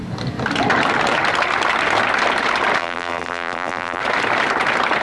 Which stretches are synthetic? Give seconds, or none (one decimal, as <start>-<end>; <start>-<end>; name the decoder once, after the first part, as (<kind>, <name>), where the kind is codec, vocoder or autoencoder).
2.8-4.0 (vocoder, BigVGAN v2)